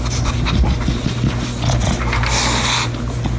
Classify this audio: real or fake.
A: real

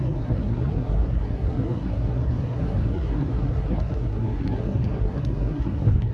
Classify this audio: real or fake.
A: fake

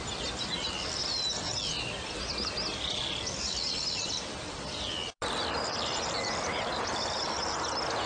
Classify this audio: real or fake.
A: real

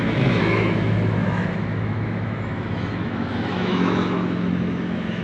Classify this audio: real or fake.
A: fake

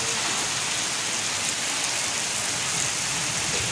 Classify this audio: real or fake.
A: real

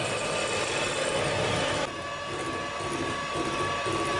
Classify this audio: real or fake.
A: real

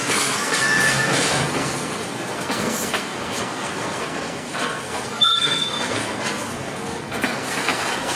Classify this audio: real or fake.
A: fake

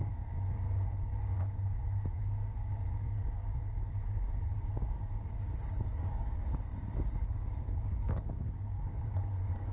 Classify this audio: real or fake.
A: fake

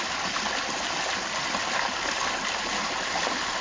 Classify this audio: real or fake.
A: real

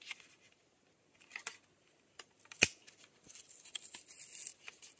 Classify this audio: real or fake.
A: real